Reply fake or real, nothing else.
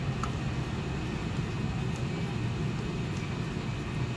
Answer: real